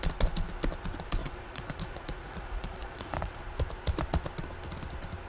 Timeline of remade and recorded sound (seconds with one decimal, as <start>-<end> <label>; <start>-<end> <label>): 0.0-1.2 recorded; 1.2-3.4 remade; 3.4-5.3 recorded